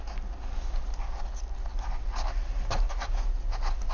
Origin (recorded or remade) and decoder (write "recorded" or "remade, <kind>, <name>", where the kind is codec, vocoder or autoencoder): recorded